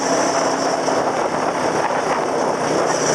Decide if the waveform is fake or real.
real